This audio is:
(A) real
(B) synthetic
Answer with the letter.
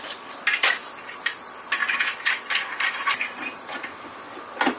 A